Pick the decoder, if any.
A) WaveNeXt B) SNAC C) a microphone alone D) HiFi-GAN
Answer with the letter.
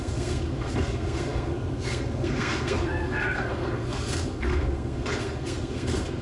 B